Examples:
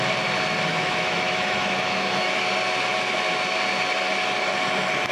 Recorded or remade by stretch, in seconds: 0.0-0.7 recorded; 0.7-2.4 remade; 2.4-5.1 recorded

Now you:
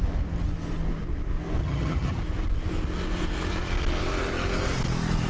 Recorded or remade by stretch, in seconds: 0.0-1.6 recorded; 1.6-2.2 remade; 2.2-5.3 recorded

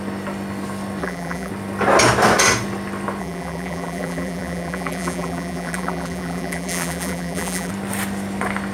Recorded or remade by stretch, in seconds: 0.0-1.0 recorded; 1.0-1.5 remade; 1.5-3.2 recorded; 3.2-7.7 remade; 7.7-8.7 recorded

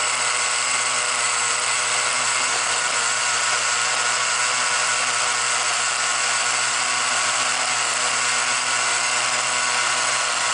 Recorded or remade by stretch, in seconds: 0.0-3.9 remade; 3.9-4.9 recorded; 4.9-7.5 remade; 7.5-8.9 recorded; 8.9-10.5 remade

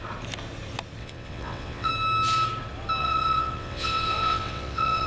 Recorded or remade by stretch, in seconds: 0.0-1.0 recorded; 1.0-1.9 remade; 1.9-3.0 recorded; 3.0-5.1 remade